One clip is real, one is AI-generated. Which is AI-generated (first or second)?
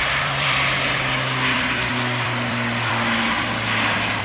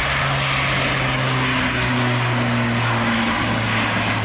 first